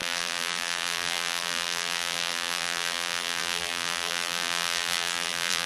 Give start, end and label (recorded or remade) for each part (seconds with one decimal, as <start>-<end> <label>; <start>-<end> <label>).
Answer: 0.0-5.7 remade